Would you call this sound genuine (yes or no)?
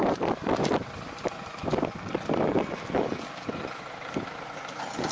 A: no